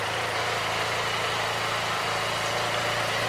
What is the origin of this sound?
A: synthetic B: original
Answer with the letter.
B